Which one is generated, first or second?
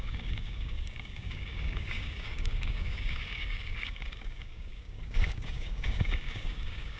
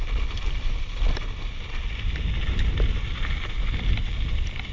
first